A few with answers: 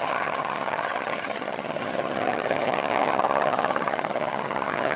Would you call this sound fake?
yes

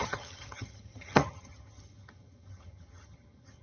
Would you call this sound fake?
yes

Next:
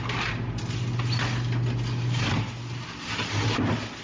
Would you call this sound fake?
no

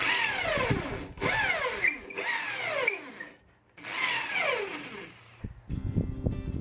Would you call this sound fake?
no